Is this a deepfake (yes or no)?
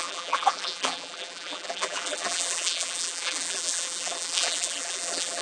yes